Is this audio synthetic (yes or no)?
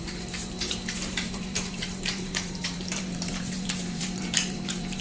yes